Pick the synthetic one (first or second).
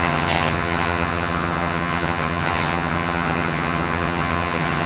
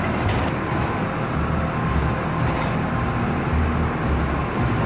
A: first